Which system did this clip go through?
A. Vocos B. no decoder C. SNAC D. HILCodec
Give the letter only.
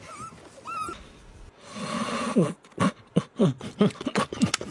B